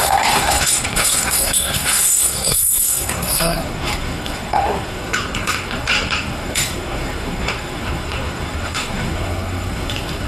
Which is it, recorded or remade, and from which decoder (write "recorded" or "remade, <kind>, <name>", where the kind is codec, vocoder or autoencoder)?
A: remade, codec, SNAC